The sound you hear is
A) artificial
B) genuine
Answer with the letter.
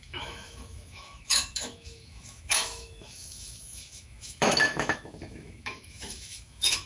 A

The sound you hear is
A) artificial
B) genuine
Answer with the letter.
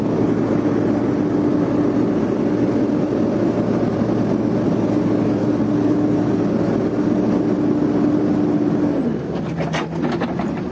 B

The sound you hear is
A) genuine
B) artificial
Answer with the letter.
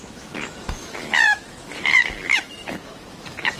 B